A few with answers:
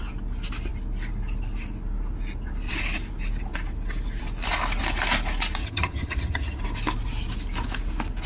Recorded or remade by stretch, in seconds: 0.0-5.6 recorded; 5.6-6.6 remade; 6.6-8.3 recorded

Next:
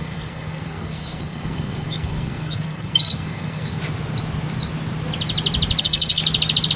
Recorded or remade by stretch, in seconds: 0.0-3.8 remade; 3.8-5.8 recorded; 5.8-6.2 remade; 6.2-6.8 recorded

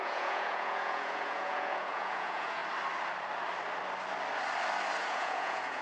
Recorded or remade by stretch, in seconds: 0.0-2.6 remade; 2.6-5.0 recorded; 5.0-5.8 remade

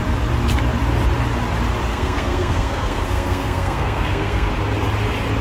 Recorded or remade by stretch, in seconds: 0.0-1.9 recorded; 1.9-4.5 remade; 4.5-5.4 recorded